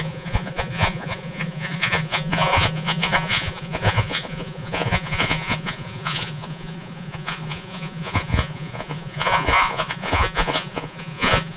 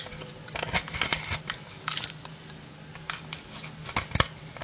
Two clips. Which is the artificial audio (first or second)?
first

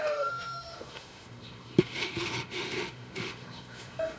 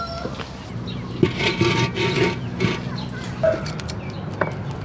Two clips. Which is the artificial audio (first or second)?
first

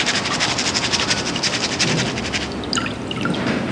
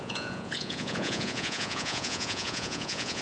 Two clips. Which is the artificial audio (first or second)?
second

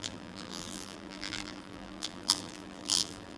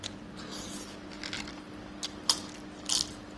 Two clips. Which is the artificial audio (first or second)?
first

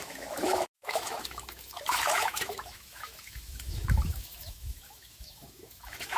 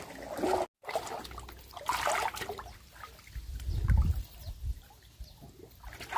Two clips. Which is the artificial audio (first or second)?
first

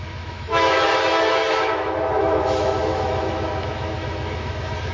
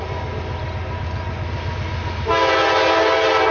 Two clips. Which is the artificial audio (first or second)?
first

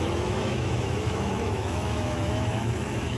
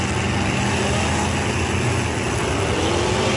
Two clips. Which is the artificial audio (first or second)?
first